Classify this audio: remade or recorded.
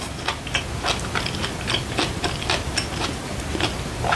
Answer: recorded